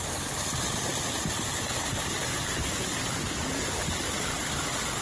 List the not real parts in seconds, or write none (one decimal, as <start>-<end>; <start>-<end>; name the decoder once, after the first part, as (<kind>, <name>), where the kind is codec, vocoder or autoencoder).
none